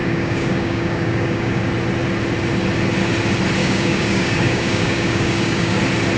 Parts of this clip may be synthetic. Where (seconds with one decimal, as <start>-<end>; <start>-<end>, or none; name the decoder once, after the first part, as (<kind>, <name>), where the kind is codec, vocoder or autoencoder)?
0.0-1.6 (codec, DAC); 3.6-5.8